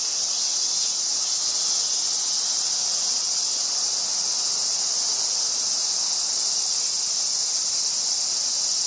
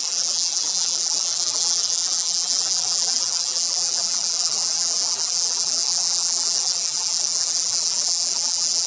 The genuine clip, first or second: first